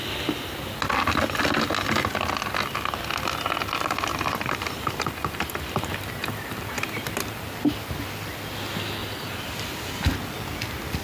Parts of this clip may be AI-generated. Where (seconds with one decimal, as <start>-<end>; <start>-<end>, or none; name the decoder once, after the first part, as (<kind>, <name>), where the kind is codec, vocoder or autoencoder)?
4.1-6.8 (vocoder, BigVGAN v2); 9.0-10.0